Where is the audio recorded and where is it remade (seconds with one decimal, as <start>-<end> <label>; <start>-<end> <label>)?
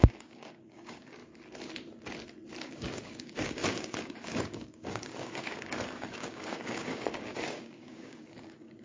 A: 0.0-1.2 remade; 1.2-2.6 recorded; 2.6-8.8 remade